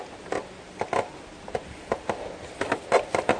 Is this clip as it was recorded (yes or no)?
yes